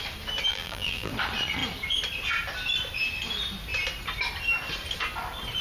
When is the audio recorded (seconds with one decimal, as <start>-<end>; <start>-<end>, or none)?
0.0-0.5; 1.1-5.6